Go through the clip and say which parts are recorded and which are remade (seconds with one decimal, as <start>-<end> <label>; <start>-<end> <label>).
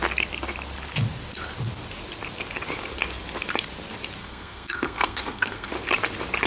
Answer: 0.0-4.2 recorded; 4.2-5.7 remade; 5.7-6.5 recorded